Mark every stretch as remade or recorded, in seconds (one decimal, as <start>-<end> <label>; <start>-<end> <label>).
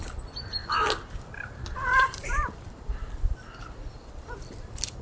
0.0-0.6 remade; 0.6-1.5 recorded; 1.5-5.0 remade